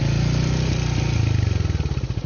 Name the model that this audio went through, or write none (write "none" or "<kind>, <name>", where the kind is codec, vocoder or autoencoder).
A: none